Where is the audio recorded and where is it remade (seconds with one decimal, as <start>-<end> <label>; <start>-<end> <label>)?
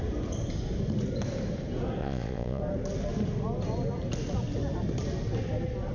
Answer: 0.0-2.0 recorded; 2.0-2.6 remade; 2.6-5.9 recorded